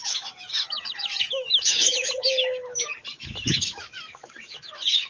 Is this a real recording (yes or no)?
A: no